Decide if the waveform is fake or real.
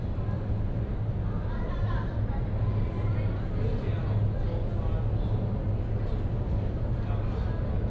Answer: real